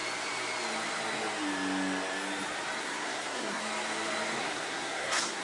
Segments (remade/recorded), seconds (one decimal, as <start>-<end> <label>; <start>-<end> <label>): 0.0-2.8 recorded; 2.8-3.6 remade; 3.6-4.4 recorded; 4.4-5.4 remade